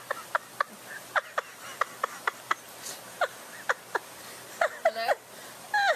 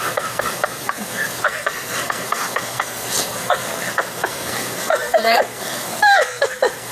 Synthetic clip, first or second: second